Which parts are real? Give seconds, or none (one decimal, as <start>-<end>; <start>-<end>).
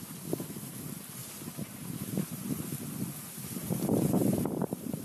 0.0-5.0